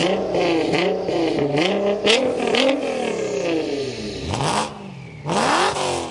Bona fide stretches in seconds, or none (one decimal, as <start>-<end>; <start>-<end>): 0.0-6.1